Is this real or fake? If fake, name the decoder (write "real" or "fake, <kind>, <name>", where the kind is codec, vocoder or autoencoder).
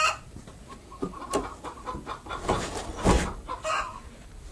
fake, vocoder, BigVGAN v2